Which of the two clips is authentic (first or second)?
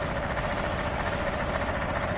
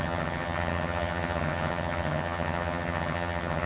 first